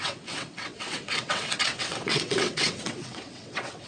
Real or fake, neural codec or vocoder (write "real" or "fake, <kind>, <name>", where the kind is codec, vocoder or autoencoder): fake, vocoder, WaveNeXt